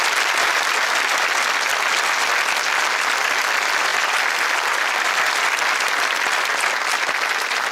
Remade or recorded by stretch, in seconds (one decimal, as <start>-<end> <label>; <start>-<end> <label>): 0.0-3.9 recorded; 3.9-5.0 remade; 5.0-7.7 recorded